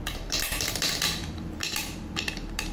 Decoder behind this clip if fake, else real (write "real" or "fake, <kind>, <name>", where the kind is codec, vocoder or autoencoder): fake, vocoder, BigVGAN v2